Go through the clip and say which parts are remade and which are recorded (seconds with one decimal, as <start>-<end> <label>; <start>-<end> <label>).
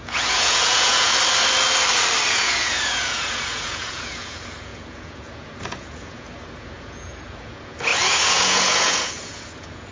0.0-1.1 remade; 1.1-2.3 recorded; 2.3-9.9 remade